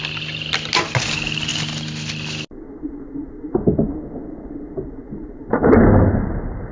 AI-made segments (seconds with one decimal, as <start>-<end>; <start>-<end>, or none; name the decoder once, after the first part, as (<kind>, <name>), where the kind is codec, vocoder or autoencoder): none

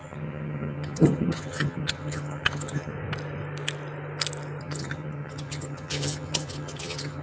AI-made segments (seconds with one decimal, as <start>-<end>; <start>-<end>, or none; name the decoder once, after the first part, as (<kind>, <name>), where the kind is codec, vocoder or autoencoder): 0.0-2.9 (vocoder, HiFi-GAN); 4.6-7.2

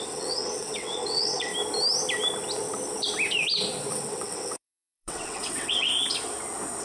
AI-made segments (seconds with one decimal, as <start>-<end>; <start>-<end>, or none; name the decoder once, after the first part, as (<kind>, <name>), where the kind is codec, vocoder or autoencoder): 0.0-1.5 (vocoder, WaveNeXt); 3.9-5.9